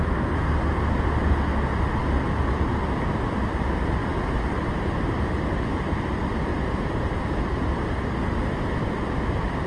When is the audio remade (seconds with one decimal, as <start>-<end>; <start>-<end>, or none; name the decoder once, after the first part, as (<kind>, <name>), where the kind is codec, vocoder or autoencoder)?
2.0-2.6 (vocoder, BigVGAN v2); 4.0-5.2; 6.5-7.4